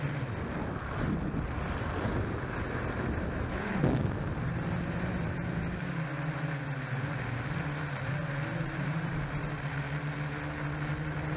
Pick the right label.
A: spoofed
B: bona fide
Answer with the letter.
B